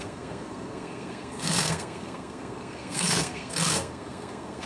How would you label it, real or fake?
fake